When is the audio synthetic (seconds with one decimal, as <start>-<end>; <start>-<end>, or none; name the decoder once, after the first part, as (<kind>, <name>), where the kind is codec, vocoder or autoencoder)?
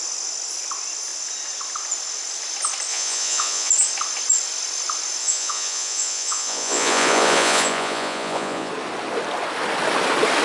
2.9-3.7 (vocoder, Vocos); 5.2-8.7